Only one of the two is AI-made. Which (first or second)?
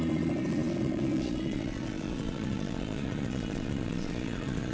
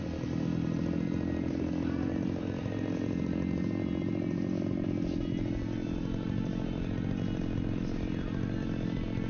first